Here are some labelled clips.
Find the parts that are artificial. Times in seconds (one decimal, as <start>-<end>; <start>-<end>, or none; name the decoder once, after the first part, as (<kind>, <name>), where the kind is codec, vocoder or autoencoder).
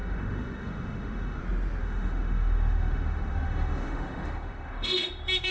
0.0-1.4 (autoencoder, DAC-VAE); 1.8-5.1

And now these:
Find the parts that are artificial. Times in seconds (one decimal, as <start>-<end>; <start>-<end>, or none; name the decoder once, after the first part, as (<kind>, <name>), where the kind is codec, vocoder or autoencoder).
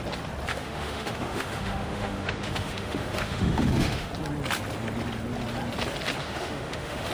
0.5-4.1 (autoencoder, DAC-VAE); 6.2-7.1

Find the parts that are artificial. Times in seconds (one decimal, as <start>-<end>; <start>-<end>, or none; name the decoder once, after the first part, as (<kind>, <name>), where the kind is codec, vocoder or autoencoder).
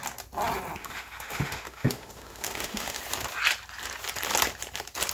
0.8-3.0 (autoencoder, DAC-VAE)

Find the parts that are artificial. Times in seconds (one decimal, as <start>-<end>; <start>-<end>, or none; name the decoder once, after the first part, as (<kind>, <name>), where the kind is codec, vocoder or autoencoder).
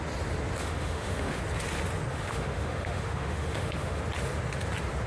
0.6-1.4 (autoencoder, DAC-VAE); 2.1-4.0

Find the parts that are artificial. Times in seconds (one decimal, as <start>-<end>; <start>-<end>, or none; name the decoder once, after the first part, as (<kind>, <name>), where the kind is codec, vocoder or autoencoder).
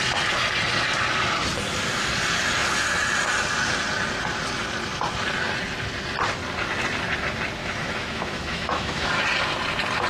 7.6-9.1 (autoencoder, DAC-VAE)